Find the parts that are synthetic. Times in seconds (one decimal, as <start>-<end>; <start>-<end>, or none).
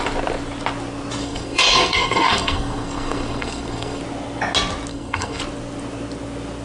1.2-4.0; 4.9-5.4